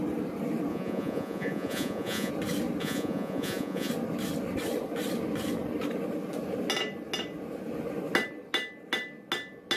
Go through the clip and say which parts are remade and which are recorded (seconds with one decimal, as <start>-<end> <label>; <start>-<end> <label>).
0.0-0.7 recorded; 0.7-2.3 remade; 2.3-2.8 recorded; 2.8-3.9 remade; 3.9-9.8 recorded